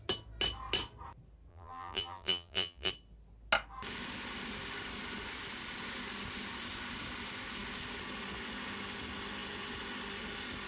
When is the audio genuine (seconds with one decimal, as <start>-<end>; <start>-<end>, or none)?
0.0-1.5; 2.9-10.7